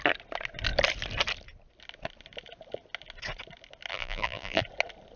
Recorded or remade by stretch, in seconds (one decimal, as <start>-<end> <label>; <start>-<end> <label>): 0.0-3.9 recorded; 3.9-4.6 remade; 4.6-5.2 recorded